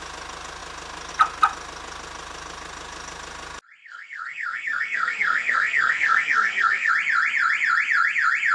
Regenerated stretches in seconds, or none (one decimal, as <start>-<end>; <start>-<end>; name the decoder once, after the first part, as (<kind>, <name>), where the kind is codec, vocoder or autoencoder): 3.8-6.9 (codec, SNAC)